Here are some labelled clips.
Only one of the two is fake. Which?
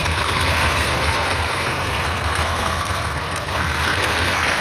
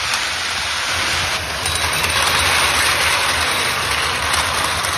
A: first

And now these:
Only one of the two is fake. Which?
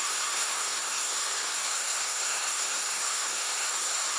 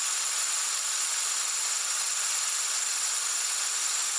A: first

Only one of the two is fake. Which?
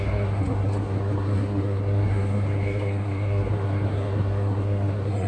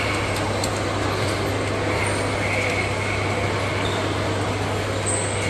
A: first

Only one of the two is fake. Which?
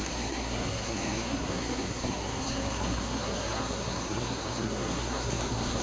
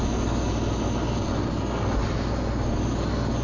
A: first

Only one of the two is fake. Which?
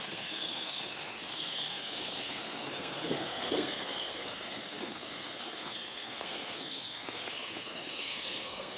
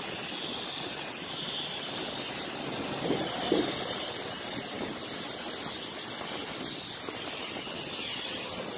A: first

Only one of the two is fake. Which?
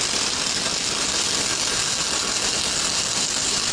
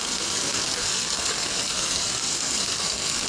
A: second